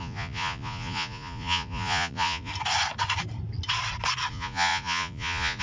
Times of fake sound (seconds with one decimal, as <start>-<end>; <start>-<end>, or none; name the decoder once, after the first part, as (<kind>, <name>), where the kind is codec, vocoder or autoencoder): 0.0-2.5 (vocoder, Vocos); 4.3-5.6